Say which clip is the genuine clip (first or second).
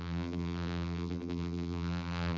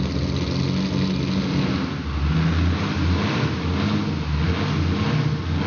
second